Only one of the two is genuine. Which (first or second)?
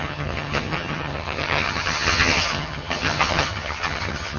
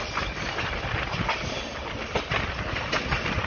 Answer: second